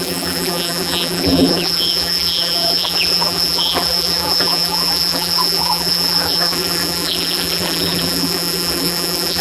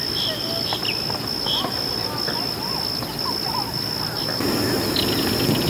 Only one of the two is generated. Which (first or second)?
first